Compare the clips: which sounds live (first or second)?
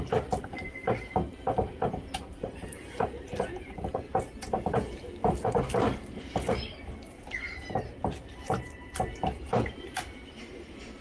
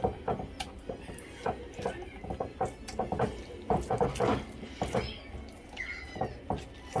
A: second